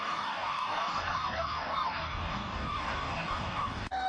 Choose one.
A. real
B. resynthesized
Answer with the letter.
B